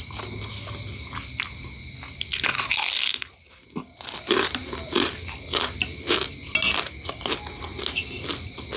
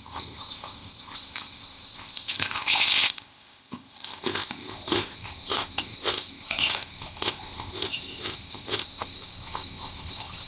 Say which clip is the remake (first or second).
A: second